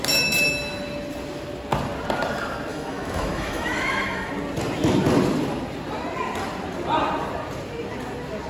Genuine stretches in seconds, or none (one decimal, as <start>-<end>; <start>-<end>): 0.0-2.7; 4.3-8.5